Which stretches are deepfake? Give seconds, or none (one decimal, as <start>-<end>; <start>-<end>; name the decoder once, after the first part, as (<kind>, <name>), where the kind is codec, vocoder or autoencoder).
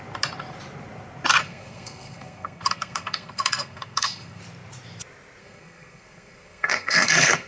1.4-4.4 (codec, SNAC); 5.4-7.5